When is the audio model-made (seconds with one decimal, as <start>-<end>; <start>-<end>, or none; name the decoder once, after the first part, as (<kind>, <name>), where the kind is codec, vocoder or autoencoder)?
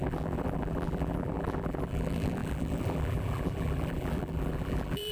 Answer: 0.0-5.1 (vocoder, BigVGAN v2)